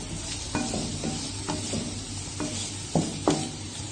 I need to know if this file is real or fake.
real